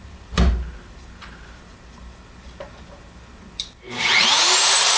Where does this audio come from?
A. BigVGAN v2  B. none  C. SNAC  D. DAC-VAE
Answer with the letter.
A